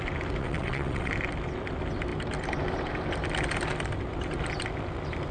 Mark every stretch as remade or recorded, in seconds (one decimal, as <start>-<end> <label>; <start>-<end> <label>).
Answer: 0.0-0.4 recorded; 0.4-1.1 remade; 1.1-5.3 recorded